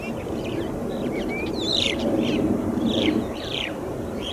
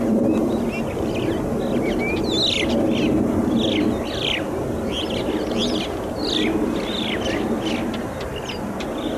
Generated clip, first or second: first